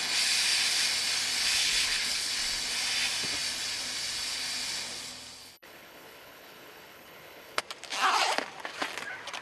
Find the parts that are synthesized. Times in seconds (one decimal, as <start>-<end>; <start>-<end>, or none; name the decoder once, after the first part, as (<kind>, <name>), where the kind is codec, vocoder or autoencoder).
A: 1.6-2.3 (codec, HILCodec); 5.4-7.6